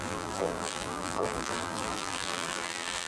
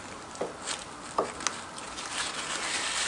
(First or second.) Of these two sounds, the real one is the second